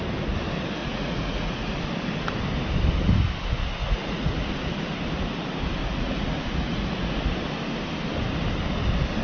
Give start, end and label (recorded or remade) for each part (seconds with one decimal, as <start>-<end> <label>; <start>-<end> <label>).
0.0-0.8 recorded; 0.8-1.7 remade; 1.7-3.8 recorded; 3.8-4.5 remade; 4.5-5.8 recorded; 5.8-7.2 remade; 7.2-9.2 recorded